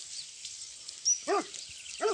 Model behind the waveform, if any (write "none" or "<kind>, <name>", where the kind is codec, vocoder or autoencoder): none